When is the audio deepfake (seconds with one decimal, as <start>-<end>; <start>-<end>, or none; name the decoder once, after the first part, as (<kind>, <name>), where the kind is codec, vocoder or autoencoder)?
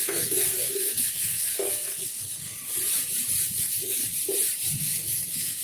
0.0-2.7 (codec, SNAC); 3.6-4.0; 4.8-5.6